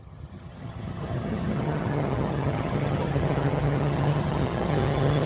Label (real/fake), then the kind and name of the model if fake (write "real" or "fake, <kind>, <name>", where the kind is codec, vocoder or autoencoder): fake, vocoder, HiFi-GAN